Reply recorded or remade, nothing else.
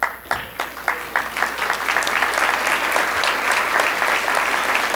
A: recorded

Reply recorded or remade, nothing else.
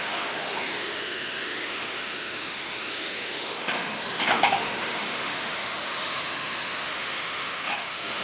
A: remade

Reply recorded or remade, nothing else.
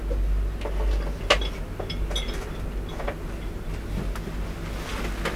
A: recorded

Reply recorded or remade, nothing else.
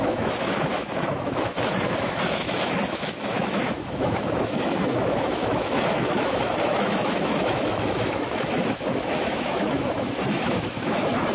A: remade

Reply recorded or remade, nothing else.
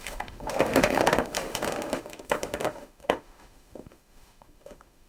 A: remade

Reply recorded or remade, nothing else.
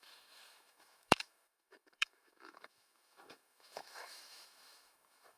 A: remade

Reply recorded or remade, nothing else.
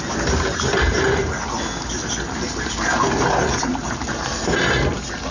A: recorded